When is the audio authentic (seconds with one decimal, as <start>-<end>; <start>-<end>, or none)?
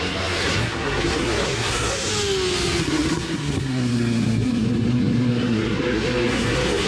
2.1-2.8